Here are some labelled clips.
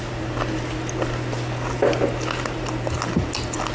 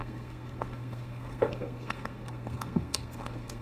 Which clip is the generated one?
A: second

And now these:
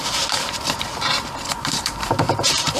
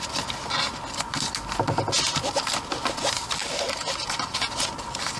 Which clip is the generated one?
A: first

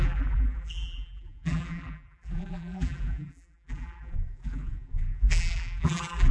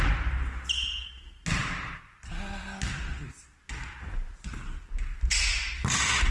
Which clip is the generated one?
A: first